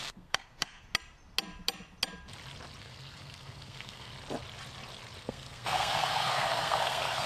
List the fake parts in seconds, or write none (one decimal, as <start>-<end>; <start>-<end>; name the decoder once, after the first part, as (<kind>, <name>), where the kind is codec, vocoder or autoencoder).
0.0-0.9 (codec, SNAC); 2.8-4.1; 5.2-7.3